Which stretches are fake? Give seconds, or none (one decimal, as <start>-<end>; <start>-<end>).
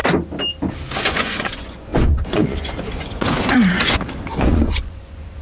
1.0-5.4